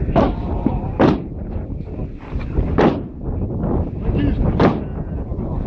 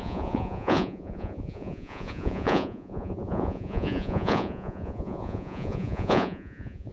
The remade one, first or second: second